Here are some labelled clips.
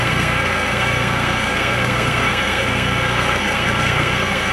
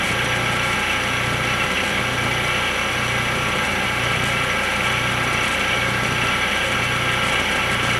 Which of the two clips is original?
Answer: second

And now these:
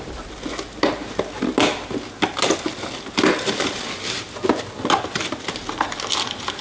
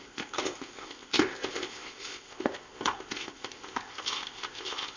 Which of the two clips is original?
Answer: first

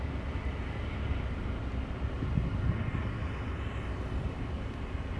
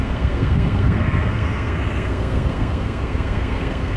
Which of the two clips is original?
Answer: first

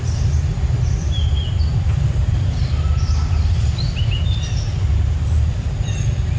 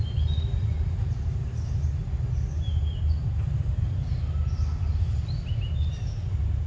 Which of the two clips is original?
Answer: second